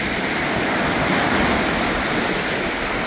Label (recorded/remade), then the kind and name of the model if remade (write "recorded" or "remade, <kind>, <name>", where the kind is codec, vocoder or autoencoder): recorded